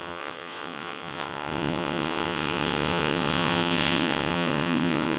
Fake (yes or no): yes